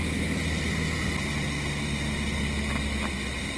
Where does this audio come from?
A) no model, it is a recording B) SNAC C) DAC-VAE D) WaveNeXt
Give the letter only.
A